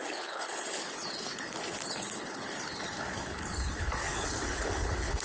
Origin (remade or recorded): remade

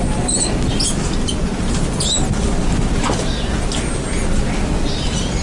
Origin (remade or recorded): recorded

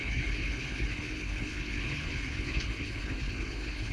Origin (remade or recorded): remade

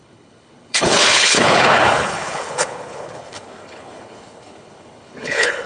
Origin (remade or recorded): remade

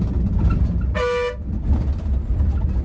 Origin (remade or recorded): recorded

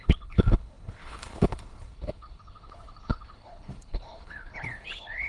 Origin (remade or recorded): remade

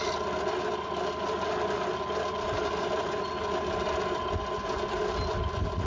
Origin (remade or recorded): recorded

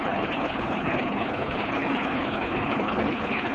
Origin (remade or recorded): remade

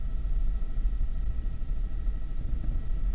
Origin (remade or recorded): recorded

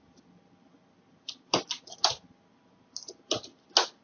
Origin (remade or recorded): recorded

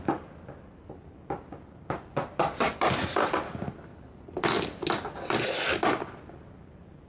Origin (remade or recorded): recorded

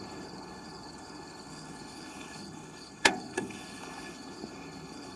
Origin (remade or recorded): remade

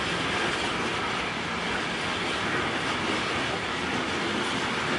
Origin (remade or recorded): recorded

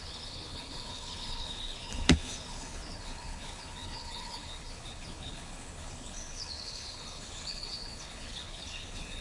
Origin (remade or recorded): remade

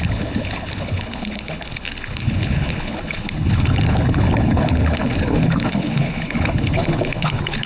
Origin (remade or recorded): remade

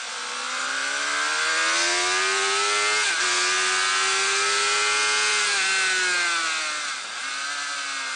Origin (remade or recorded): recorded